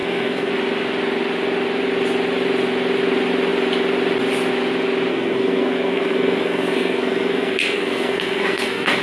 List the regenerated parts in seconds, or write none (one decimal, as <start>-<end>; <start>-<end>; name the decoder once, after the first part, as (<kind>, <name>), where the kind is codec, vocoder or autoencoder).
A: 0.0-0.5 (codec, SNAC); 5.1-9.0